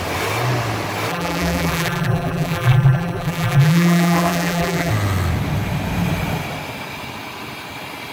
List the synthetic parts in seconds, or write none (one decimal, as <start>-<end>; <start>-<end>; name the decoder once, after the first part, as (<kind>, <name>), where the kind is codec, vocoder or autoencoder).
1.1-4.9 (vocoder, BigVGAN v2)